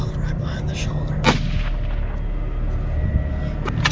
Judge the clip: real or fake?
real